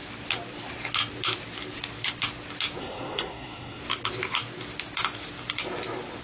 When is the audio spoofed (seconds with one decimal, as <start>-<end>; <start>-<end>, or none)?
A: 2.8-3.8